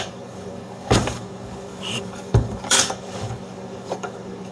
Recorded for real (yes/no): no